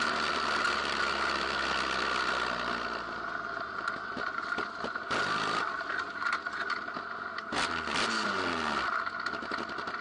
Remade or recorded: recorded